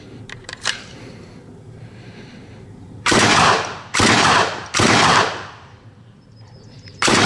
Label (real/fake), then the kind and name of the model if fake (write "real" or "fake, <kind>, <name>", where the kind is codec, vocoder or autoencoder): fake, vocoder, BigVGAN v2